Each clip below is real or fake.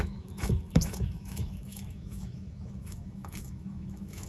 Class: fake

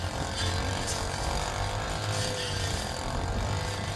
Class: real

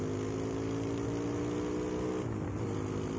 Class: real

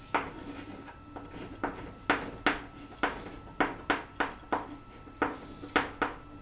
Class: real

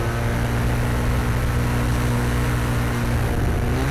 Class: real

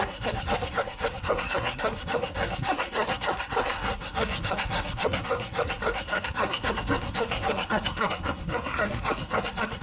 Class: fake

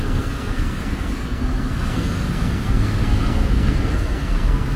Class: fake